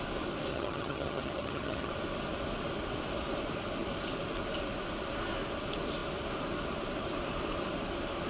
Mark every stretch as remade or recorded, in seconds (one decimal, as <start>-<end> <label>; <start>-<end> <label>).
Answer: 0.0-0.5 recorded; 0.5-1.9 remade; 1.9-8.3 recorded

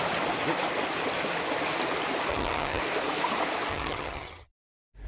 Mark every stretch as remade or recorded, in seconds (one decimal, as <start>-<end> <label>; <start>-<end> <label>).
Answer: 0.0-2.3 recorded; 2.3-2.8 remade; 2.8-3.7 recorded; 3.7-4.5 remade; 4.5-5.1 recorded

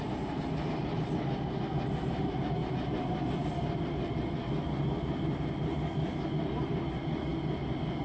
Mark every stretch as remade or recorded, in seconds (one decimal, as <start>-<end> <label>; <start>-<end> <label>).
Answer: 0.0-8.0 recorded

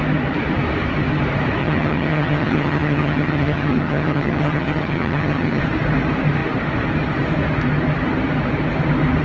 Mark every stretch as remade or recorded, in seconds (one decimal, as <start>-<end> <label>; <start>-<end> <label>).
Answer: 0.0-1.6 recorded; 1.6-5.6 remade; 5.6-9.2 recorded